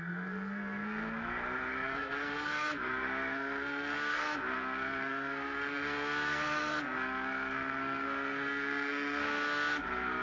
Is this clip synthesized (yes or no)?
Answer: yes